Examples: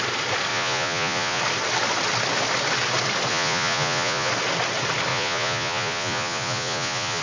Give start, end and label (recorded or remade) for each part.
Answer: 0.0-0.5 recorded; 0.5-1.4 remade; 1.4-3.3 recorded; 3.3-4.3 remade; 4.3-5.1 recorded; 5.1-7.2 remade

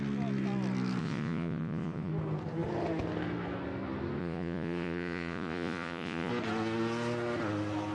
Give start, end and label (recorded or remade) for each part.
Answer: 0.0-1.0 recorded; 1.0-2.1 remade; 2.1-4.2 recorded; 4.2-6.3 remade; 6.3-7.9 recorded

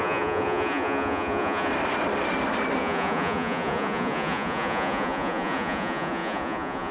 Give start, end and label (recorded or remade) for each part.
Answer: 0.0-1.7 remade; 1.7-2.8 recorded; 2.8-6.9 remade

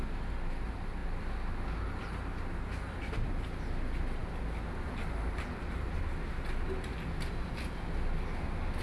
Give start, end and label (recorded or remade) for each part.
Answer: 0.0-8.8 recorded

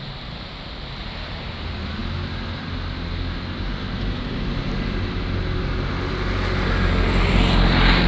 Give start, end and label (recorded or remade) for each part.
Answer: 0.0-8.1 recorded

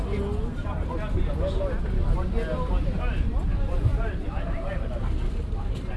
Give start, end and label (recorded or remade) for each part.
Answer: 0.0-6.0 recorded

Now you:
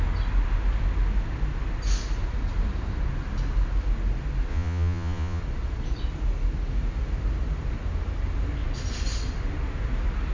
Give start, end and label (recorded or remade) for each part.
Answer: 0.0-4.5 recorded; 4.5-5.4 remade; 5.4-10.3 recorded